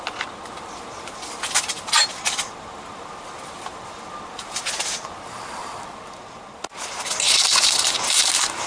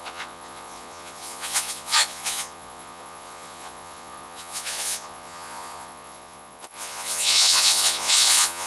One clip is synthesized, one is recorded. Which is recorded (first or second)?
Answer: first